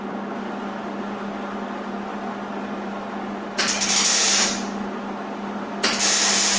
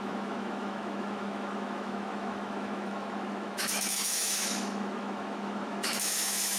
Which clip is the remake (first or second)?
second